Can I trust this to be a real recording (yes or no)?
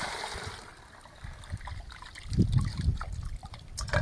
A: no